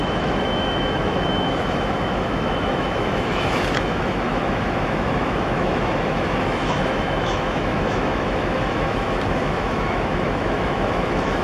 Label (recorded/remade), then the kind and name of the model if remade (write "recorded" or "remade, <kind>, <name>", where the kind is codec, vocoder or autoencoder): remade, autoencoder, DAC-VAE